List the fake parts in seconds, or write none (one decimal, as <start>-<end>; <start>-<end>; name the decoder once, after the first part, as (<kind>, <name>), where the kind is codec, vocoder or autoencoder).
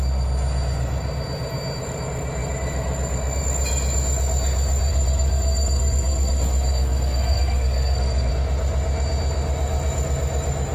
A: 4.9-8.3 (codec, SNAC)